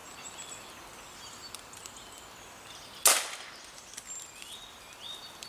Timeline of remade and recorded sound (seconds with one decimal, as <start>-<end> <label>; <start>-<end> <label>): 0.0-0.7 recorded; 0.7-1.4 remade; 1.4-4.7 recorded; 4.7-5.5 remade